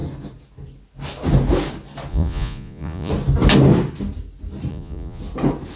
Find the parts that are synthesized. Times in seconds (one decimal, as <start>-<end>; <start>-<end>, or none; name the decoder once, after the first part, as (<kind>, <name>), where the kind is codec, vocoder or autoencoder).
2.1-3.1 (vocoder, Vocos); 4.7-5.2